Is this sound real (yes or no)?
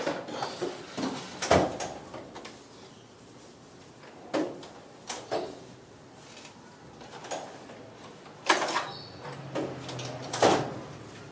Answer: yes